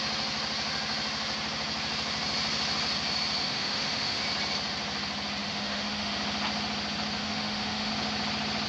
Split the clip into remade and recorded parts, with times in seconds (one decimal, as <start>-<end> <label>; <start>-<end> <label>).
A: 0.0-3.4 recorded; 3.4-4.2 remade; 4.2-5.4 recorded; 5.4-6.1 remade; 6.1-7.2 recorded; 7.2-7.9 remade; 7.9-8.7 recorded